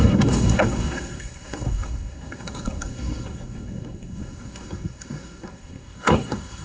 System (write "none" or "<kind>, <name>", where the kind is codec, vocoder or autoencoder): codec, SNAC